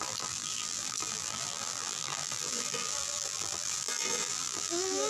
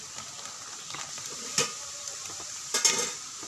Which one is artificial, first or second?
first